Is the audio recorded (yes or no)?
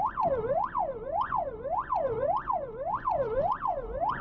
no